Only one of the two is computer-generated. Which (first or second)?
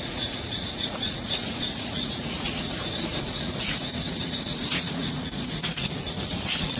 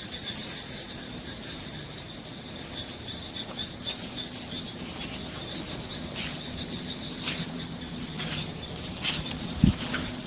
first